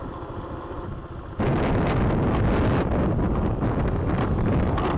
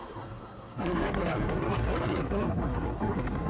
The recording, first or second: first